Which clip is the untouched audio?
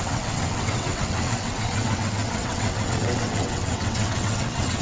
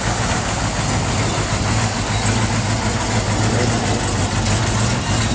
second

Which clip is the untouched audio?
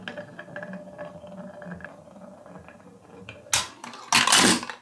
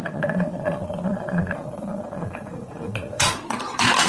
first